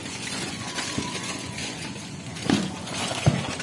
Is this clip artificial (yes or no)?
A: yes